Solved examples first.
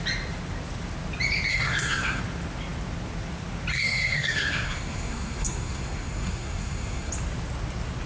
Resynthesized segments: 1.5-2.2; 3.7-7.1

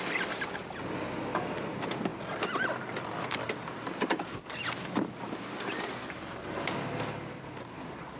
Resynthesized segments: 0.6-1.7